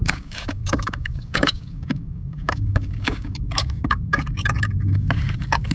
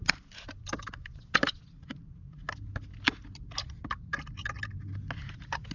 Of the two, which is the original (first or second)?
second